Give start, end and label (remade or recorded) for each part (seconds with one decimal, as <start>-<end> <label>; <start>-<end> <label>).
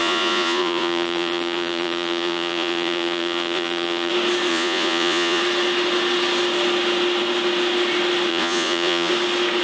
0.0-4.1 remade; 4.1-4.5 recorded; 4.5-5.4 remade; 5.4-8.3 recorded; 8.3-9.1 remade; 9.1-9.6 recorded